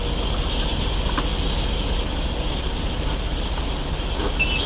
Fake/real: real